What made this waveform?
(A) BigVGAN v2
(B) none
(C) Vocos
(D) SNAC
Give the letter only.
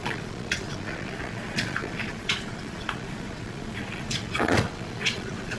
C